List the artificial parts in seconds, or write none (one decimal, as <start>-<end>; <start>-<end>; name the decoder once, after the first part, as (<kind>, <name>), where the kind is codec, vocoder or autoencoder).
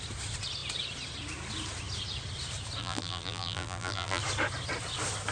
2.8-4.2 (vocoder, BigVGAN v2)